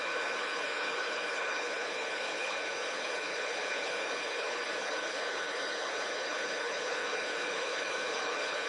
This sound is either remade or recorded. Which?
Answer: remade